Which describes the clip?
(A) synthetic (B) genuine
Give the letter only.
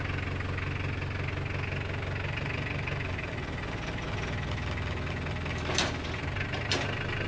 B